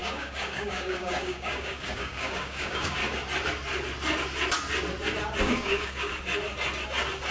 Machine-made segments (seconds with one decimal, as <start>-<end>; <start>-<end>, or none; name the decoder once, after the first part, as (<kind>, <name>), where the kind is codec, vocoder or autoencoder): 0.0-3.0 (codec, DAC); 5.4-6.1